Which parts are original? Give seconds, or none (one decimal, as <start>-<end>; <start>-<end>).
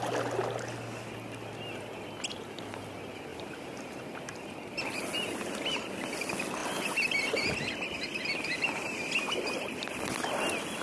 0.0-3.3; 5.6-10.8